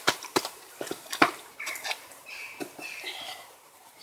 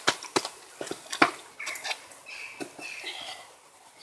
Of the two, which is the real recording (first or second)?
second